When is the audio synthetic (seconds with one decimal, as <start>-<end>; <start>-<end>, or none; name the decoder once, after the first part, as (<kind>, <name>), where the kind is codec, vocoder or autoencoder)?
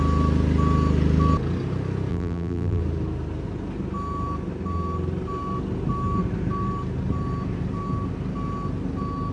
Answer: 2.1-2.8 (vocoder, BigVGAN v2)